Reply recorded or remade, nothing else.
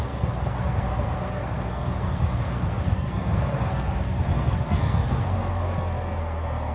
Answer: remade